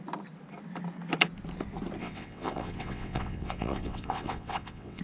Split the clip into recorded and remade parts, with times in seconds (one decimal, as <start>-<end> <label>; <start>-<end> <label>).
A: 0.0-2.0 recorded; 2.0-5.0 remade